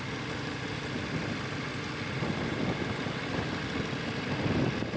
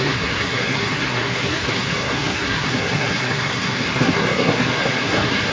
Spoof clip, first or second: second